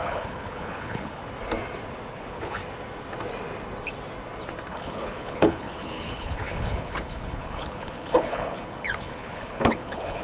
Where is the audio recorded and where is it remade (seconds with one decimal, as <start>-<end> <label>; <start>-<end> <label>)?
0.0-1.2 remade; 1.2-2.1 recorded; 2.1-2.6 remade; 2.6-4.7 recorded; 4.7-10.2 remade